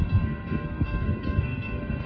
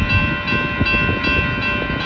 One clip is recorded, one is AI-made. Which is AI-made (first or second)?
first